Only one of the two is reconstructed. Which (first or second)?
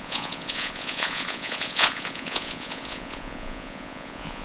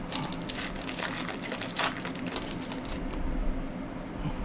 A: first